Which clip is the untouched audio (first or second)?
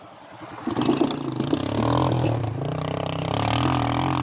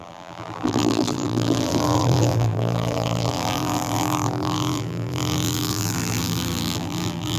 first